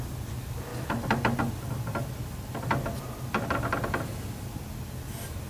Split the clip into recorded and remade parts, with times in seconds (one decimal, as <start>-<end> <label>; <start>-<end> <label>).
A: 0.0-5.5 recorded

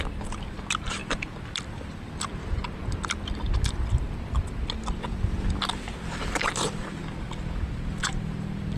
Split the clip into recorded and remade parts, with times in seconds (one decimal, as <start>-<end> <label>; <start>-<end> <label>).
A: 0.0-2.8 remade; 2.8-6.3 recorded; 6.3-7.0 remade; 7.0-7.7 recorded; 7.7-8.8 remade

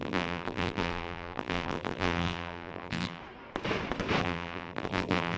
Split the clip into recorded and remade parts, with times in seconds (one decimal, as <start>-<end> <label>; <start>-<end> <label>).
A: 0.0-3.2 remade; 3.2-4.2 recorded; 4.2-5.4 remade

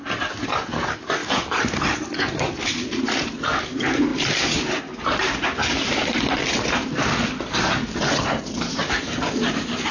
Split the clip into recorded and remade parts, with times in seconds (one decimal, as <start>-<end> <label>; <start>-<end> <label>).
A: 0.0-1.2 recorded; 1.2-3.6 remade; 3.6-6.4 recorded; 6.4-8.6 remade; 8.6-9.9 recorded

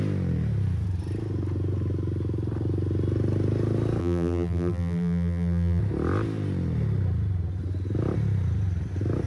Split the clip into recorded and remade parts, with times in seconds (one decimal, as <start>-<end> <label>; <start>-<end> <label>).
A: 0.0-4.0 recorded; 4.0-5.8 remade; 5.8-9.3 recorded

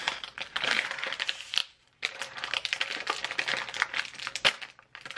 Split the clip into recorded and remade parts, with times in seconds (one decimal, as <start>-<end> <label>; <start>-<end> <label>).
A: 0.0-3.2 remade; 3.2-5.2 recorded

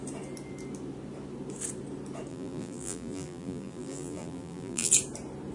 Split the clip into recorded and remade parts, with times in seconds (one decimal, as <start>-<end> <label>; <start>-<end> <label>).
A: 0.0-2.3 recorded; 2.3-4.9 remade; 4.9-5.5 recorded

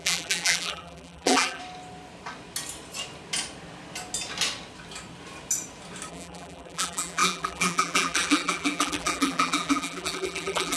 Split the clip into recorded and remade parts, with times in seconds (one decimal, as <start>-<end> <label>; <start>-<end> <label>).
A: 0.0-1.6 remade; 1.6-6.1 recorded; 6.1-10.8 remade